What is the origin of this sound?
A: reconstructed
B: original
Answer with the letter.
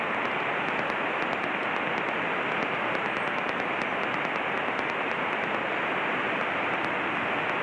B